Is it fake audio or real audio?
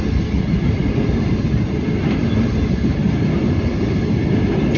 real